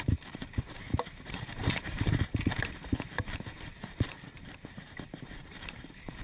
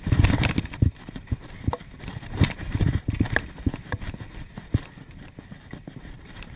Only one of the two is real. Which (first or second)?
second